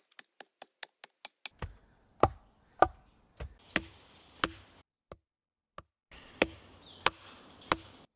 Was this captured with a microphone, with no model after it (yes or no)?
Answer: yes